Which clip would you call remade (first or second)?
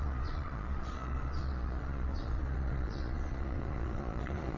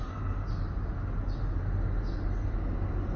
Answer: first